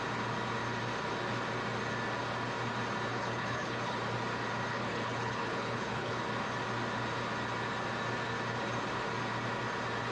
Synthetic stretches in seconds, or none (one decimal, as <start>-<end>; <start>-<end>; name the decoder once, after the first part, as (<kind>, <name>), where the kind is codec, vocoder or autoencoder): 3.1-4.0 (codec, HILCodec); 4.7-6.2

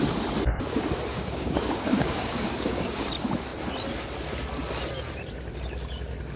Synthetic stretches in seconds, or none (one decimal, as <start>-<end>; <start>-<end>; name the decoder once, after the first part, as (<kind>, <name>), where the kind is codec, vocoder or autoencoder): 1.1-3.1 (codec, DAC)

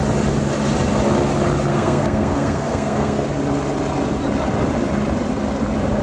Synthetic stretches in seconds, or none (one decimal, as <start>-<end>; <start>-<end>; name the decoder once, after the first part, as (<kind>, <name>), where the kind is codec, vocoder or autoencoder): 1.7-3.3 (codec, SNAC)

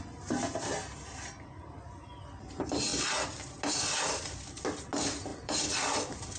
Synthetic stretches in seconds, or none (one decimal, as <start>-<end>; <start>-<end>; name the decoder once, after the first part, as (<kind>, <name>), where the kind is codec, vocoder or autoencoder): 5.3-6.4 (vocoder, BigVGAN v2)

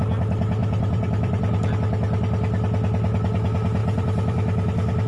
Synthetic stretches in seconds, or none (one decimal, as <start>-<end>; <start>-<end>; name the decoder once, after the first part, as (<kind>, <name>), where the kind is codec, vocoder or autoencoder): 0.6-1.7 (vocoder, BigVGAN v2); 3.8-5.1

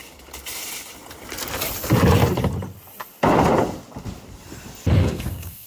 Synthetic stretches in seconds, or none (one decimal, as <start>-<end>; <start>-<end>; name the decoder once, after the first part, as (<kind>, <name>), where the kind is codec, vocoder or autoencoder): 5.0-5.7 (codec, SNAC)

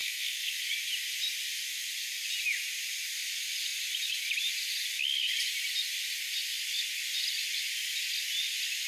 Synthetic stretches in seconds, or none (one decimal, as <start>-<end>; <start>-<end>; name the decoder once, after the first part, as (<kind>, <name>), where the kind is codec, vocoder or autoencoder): 0.0-0.6 (codec, SNAC)